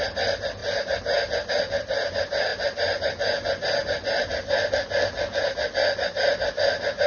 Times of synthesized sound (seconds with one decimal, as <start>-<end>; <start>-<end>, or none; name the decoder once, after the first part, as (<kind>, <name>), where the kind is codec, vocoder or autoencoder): none